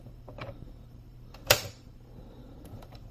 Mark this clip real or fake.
fake